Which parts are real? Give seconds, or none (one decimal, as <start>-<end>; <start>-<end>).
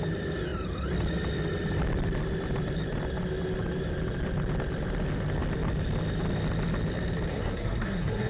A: 0.0-7.3